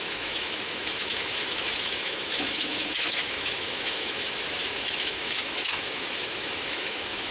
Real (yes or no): no